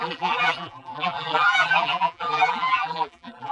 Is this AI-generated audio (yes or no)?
yes